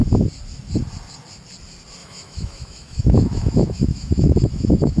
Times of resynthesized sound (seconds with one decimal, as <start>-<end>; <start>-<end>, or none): 2.0-5.0